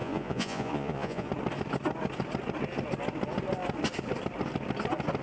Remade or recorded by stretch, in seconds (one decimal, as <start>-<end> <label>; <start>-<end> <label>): 0.0-1.3 remade; 1.3-5.2 recorded